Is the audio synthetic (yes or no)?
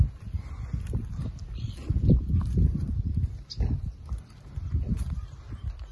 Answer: no